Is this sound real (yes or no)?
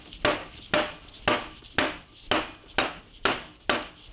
yes